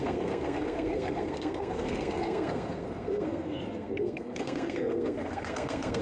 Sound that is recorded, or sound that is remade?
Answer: remade